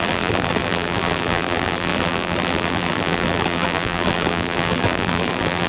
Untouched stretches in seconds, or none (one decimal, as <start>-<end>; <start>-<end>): none